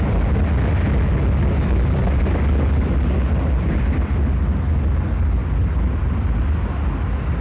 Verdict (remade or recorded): recorded